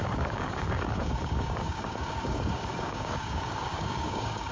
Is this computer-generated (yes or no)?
yes